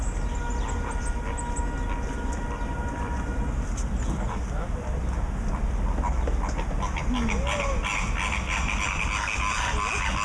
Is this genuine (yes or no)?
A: yes